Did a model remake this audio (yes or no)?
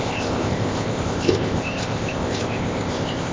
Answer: yes